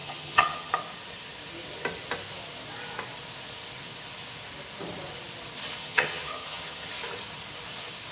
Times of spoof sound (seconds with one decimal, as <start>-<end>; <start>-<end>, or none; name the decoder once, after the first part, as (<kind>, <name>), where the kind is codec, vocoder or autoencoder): 0.0-0.7 (vocoder, HiFi-GAN); 5.8-6.9